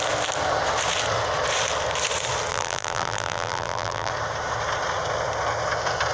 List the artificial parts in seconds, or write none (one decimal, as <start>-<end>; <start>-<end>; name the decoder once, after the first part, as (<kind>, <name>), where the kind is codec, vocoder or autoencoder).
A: 2.5-4.1 (vocoder, BigVGAN v2)